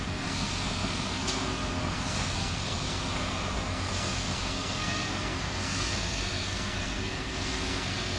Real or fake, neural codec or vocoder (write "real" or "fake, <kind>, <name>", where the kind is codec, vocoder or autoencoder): fake, codec, SNAC